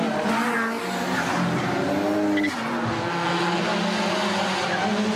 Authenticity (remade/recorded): recorded